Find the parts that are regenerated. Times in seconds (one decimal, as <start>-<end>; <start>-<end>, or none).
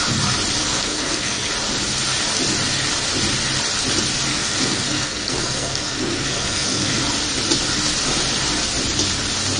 0.6-1.5; 4.3-7.0